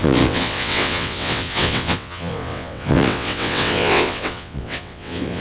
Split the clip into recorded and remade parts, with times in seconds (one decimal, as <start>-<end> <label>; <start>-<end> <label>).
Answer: 0.0-5.4 remade